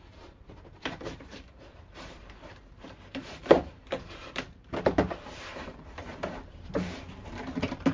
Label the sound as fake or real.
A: fake